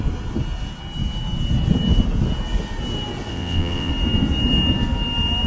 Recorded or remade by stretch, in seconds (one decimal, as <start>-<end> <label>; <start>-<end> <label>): 0.0-3.3 recorded; 3.3-3.9 remade; 3.9-5.5 recorded